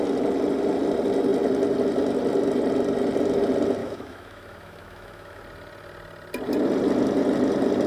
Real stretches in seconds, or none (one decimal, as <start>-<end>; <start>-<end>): 0.0-3.8; 5.4-7.9